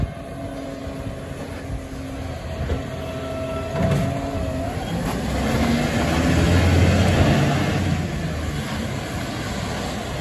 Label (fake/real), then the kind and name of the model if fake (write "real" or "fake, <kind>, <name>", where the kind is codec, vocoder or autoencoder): real